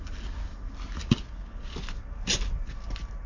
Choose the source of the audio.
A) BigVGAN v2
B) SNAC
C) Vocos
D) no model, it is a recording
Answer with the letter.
D